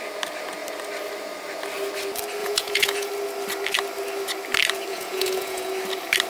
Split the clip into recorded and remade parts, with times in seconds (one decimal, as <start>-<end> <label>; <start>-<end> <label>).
0.0-2.4 recorded; 2.4-3.1 remade; 3.1-4.9 recorded; 4.9-5.7 remade; 5.7-6.3 recorded